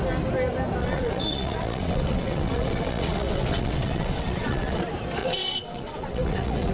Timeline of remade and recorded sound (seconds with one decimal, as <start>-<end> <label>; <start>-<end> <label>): 0.0-0.8 recorded; 0.8-4.8 remade; 4.8-5.2 recorded; 5.2-6.7 remade